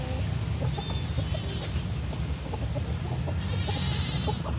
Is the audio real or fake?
real